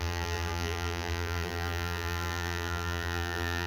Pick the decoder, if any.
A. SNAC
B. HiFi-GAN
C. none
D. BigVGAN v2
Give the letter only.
D